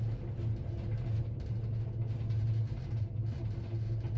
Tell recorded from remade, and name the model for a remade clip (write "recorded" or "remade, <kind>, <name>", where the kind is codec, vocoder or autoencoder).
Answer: recorded